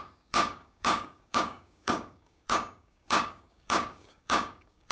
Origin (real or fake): fake